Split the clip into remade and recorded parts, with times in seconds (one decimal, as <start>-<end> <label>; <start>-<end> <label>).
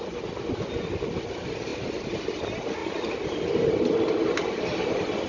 0.0-5.3 recorded